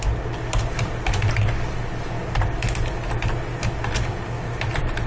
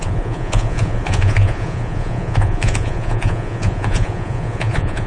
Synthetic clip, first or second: second